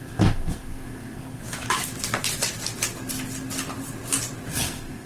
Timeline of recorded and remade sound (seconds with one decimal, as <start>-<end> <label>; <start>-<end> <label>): 0.0-1.4 remade; 1.4-4.5 recorded; 4.5-5.1 remade